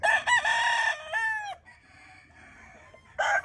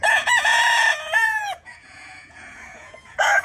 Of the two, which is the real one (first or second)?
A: first